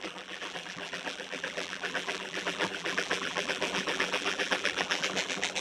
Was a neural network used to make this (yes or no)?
yes